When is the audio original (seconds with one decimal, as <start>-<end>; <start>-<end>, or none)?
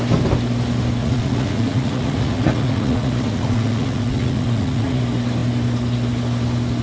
0.0-1.0; 5.0-6.8